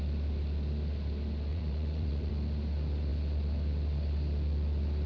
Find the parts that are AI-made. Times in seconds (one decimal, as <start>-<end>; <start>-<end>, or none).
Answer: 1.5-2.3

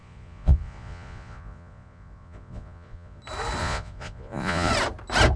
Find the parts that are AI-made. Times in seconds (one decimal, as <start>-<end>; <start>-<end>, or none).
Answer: 0.0-3.2; 3.6-4.7

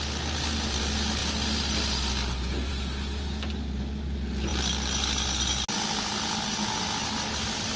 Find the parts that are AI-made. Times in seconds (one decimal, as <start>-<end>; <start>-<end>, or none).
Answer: none

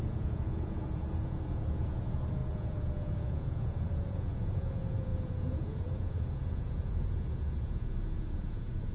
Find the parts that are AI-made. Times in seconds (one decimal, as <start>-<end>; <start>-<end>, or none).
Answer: 0.0-8.9